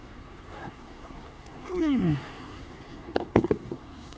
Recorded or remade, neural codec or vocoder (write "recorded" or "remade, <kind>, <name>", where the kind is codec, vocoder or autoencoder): remade, codec, SNAC